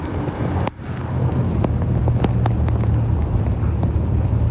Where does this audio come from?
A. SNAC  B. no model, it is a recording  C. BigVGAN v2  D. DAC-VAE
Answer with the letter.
B